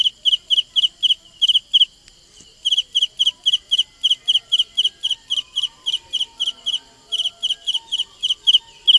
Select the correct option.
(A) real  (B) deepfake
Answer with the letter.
A